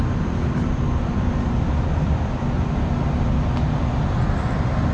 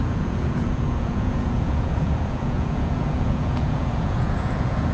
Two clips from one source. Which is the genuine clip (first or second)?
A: first